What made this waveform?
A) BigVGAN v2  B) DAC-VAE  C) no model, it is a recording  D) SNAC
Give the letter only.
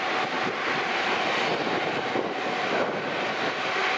C